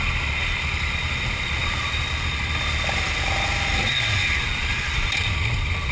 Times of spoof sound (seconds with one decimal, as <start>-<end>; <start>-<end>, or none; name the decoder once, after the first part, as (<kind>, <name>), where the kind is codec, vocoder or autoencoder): none